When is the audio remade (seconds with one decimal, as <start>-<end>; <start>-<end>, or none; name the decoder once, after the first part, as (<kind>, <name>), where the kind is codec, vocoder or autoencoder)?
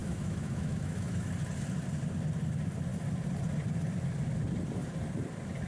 0.0-1.2 (autoencoder, DAC-VAE)